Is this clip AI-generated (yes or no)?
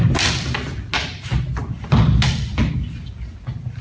no